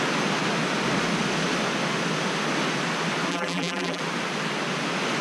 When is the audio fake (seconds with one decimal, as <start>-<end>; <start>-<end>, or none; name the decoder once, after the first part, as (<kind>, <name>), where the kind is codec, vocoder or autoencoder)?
3.3-4.0 (vocoder, BigVGAN v2)